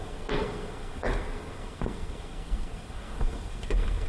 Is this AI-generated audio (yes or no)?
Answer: yes